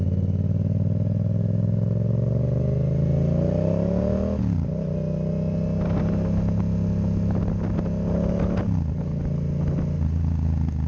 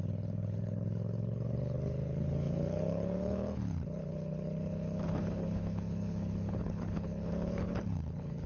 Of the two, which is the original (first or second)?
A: first